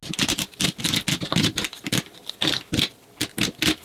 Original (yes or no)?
yes